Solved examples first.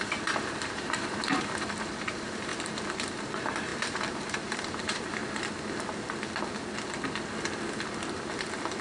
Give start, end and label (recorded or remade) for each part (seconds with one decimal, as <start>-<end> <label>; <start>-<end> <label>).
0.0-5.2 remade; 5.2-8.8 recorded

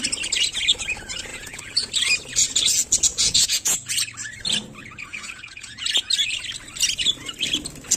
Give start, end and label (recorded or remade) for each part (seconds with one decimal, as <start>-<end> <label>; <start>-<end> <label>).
0.0-1.3 recorded; 1.3-1.9 remade; 1.9-3.1 recorded; 3.1-3.9 remade; 3.9-4.8 recorded; 4.8-6.1 remade; 6.1-8.0 recorded

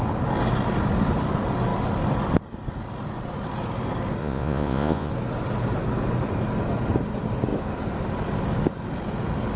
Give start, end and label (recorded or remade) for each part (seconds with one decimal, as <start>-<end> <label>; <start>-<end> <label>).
0.0-4.2 recorded; 4.2-5.1 remade; 5.1-9.6 recorded

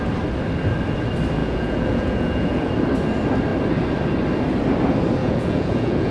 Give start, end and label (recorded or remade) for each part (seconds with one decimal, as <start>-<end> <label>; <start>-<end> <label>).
0.0-1.4 recorded; 1.4-2.7 remade; 2.7-5.2 recorded; 5.2-6.1 remade

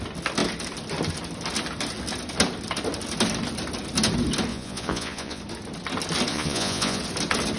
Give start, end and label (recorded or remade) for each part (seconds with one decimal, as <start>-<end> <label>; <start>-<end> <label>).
0.0-4.5 recorded; 4.5-5.4 remade; 5.4-6.3 recorded; 6.3-7.0 remade; 7.0-7.6 recorded

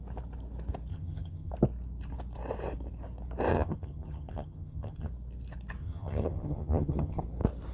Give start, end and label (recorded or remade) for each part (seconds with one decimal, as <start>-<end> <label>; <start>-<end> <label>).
0.0-0.9 recorded; 0.9-1.5 remade; 1.5-3.5 recorded; 3.5-5.1 remade; 5.1-5.8 recorded; 5.8-7.2 remade; 7.2-7.7 recorded

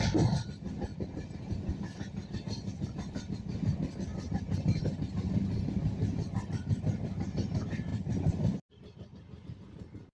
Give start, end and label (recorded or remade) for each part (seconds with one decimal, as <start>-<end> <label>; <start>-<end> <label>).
0.0-10.1 recorded

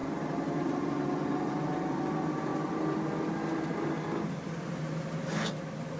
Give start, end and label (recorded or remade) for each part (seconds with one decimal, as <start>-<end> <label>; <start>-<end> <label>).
0.0-6.0 recorded